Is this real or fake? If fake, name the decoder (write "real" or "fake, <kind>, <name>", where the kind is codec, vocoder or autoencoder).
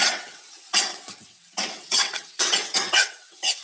fake, vocoder, WaveNeXt